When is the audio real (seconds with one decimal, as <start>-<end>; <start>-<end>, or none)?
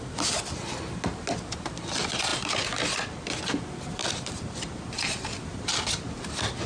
0.0-2.3; 3.4-4.0; 5.6-6.7